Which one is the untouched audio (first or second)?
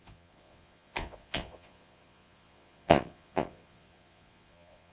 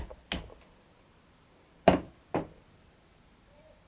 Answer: second